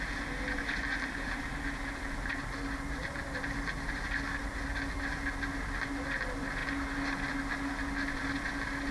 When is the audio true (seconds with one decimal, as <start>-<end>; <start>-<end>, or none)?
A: 0.0-8.9